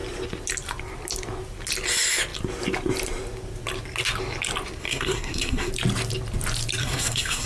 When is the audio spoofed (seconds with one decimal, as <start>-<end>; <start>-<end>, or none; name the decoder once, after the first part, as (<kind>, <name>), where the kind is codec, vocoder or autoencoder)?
4.8-5.7 (codec, SNAC); 6.8-7.5